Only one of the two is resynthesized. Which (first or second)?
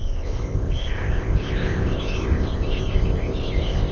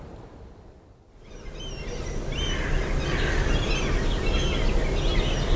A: first